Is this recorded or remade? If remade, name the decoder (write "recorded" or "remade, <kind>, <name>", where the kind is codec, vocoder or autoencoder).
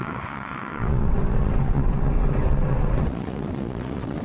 remade, vocoder, WaveNeXt